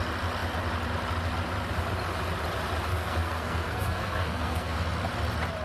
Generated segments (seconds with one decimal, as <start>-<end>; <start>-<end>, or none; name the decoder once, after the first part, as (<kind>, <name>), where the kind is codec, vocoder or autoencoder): 2.9-4.8 (codec, SNAC)

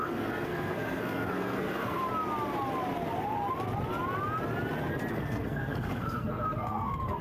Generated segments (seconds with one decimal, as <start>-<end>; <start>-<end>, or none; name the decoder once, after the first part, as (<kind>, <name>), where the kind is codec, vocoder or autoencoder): 0.0-2.0 (codec, SNAC); 5.1-7.2

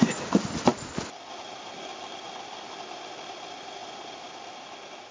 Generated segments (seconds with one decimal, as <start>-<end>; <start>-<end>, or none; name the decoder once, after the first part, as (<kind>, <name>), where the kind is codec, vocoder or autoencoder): none